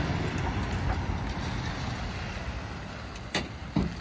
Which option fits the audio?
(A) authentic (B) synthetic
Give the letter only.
A